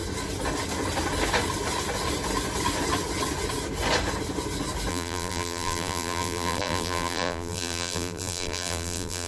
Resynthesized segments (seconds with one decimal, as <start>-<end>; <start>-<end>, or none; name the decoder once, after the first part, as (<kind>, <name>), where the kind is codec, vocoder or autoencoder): 4.9-9.3 (vocoder, BigVGAN v2)